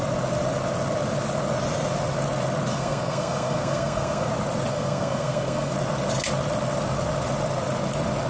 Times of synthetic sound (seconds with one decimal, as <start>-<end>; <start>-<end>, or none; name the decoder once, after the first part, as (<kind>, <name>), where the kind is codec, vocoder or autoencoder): 2.7-4.3 (codec, SNAC); 4.7-5.7